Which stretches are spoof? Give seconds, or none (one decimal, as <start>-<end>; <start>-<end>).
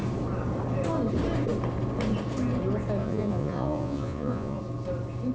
3.0-4.6